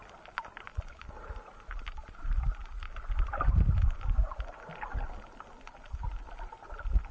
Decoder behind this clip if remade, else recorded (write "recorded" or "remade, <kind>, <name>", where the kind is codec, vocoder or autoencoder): recorded